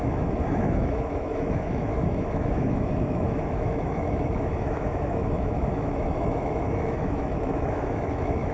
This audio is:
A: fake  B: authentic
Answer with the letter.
A